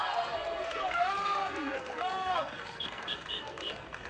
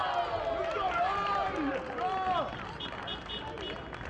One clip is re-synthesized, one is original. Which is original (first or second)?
second